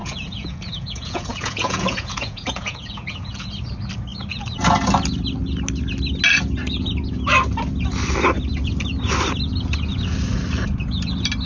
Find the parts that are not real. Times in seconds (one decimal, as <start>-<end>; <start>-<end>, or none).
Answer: 0.0-3.5